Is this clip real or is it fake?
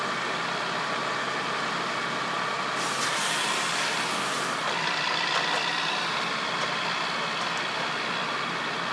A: real